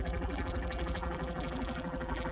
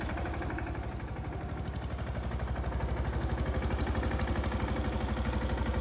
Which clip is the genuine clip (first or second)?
second